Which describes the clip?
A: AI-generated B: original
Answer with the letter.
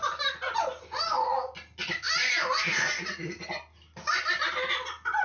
B